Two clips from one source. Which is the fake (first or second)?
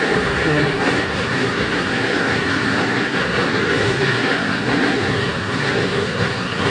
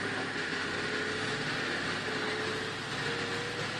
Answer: first